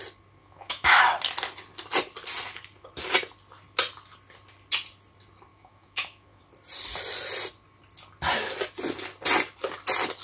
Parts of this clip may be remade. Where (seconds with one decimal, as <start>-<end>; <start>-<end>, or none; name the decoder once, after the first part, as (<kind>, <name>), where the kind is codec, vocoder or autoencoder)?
0.4-1.0 (autoencoder, DAC-VAE); 5.5-6.4